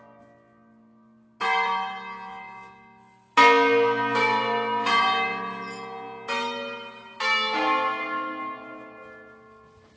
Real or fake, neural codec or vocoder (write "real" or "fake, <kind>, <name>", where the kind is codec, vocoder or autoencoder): real